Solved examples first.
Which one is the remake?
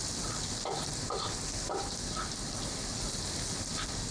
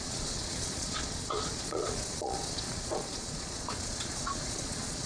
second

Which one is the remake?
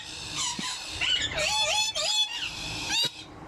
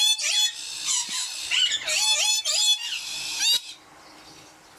first